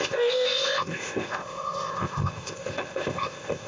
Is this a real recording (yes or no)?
no